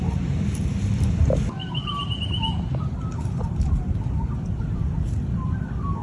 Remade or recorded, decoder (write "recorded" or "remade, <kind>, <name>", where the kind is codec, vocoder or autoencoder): recorded